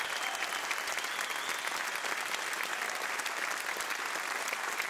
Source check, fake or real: real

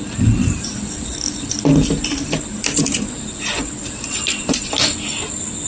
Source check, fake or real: real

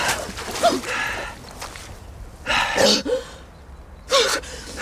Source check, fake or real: real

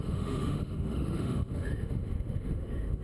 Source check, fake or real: fake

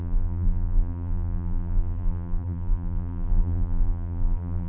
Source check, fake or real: fake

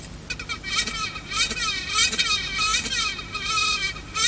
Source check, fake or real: real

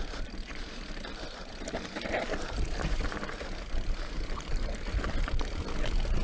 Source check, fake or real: real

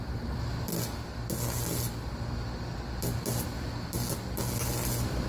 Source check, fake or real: real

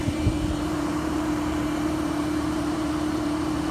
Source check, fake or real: fake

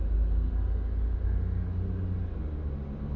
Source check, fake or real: real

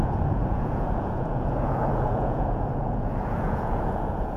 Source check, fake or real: fake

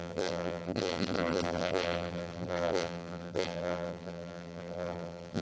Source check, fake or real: fake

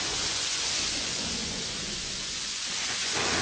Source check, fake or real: fake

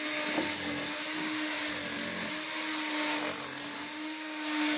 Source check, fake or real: real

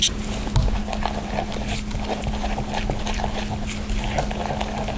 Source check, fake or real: real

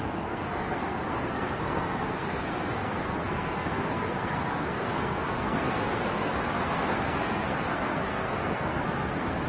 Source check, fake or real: fake